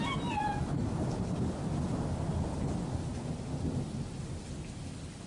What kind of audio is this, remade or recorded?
recorded